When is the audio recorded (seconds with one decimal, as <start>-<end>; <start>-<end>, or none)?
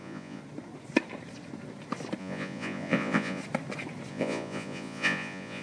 0.4-2.2; 3.4-4.1